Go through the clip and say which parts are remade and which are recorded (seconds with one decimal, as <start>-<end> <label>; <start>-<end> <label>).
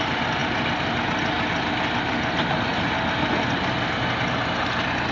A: 0.0-5.1 recorded